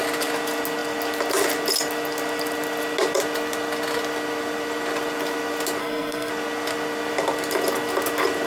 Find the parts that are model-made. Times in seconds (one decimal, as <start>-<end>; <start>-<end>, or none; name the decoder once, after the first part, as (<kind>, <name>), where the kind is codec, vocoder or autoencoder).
5.8-6.3 (codec, SNAC)